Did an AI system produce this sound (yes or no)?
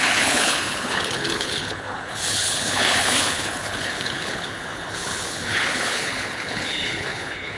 yes